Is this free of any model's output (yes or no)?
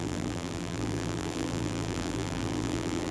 no